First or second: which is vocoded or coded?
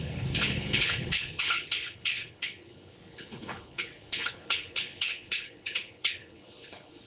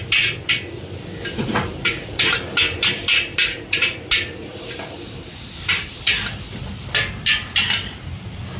first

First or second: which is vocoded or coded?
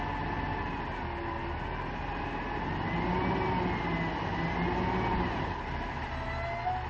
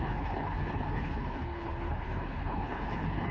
second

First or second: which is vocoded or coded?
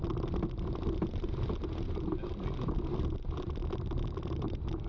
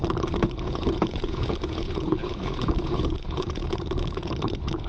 second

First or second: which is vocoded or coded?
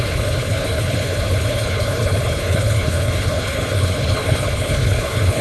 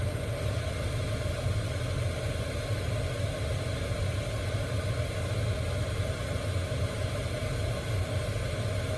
first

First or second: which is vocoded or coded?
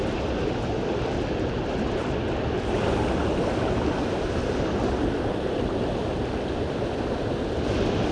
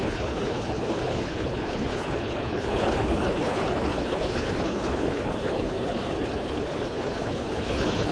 second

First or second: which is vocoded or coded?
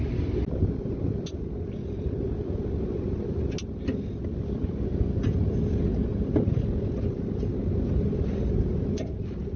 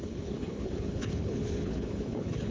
second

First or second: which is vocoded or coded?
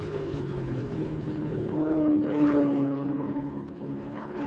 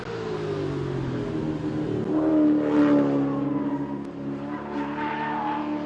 first